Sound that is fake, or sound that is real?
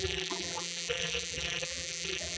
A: fake